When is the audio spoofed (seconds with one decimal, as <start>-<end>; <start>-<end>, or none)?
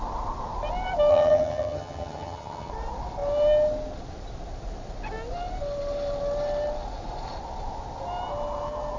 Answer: 1.1-2.7